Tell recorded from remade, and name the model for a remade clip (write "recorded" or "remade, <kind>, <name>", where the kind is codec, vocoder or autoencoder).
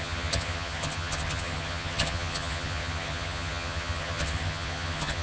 remade, vocoder, HiFi-GAN